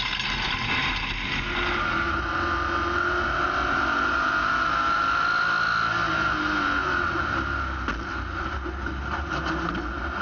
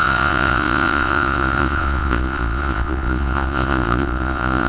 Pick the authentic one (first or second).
first